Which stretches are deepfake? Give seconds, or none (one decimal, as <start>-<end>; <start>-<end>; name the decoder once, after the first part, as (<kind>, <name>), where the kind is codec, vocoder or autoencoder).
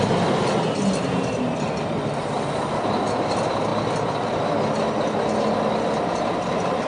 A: none